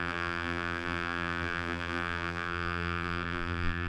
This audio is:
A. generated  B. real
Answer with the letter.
A